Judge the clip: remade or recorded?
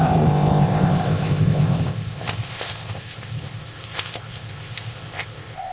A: remade